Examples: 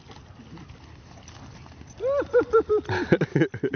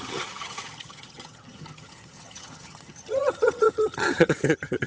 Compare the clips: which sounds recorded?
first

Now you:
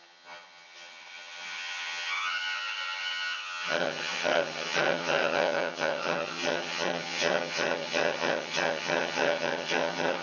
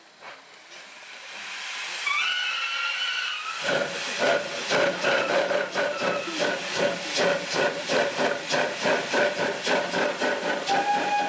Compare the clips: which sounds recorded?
second